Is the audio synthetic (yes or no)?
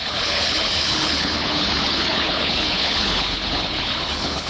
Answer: yes